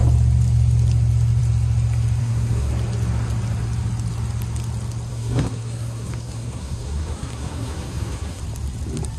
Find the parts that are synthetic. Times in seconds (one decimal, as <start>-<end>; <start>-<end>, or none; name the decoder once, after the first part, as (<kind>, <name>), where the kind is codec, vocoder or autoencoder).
2.2-2.7 (codec, SNAC); 5.1-8.4